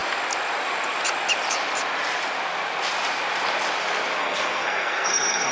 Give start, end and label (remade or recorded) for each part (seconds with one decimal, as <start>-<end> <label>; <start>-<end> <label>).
0.0-4.2 recorded; 4.2-5.5 remade